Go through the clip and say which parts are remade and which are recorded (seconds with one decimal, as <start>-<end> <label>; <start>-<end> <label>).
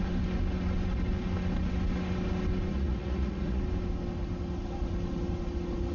0.0-2.7 recorded; 2.7-3.6 remade; 3.6-5.9 recorded